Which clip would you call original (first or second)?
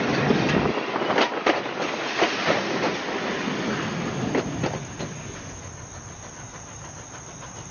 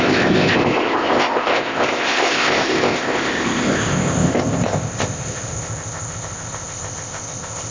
first